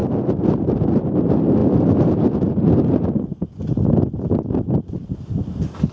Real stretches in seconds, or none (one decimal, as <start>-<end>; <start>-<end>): 0.0-1.0; 1.6-5.1